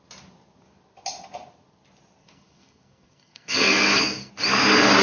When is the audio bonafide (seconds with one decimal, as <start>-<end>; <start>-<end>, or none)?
0.0-2.2; 4.3-5.0